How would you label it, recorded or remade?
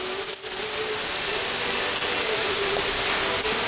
recorded